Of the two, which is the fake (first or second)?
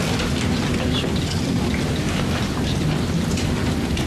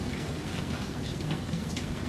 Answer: second